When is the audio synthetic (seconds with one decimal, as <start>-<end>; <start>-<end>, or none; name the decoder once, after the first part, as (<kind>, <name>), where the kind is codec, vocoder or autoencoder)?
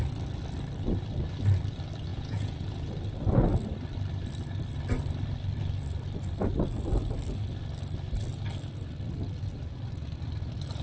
2.1-2.9 (vocoder, Vocos)